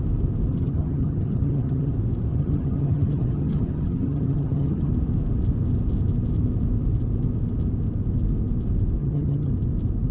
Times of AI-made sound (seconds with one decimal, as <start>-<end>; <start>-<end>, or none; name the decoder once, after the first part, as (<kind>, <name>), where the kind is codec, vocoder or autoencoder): 0.5-1.9 (vocoder, HiFi-GAN); 2.3-4.9; 9.0-9.5